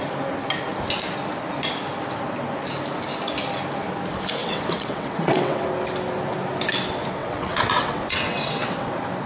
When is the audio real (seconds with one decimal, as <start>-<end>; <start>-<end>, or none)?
0.0-4.4; 5.6-7.2; 8.9-9.3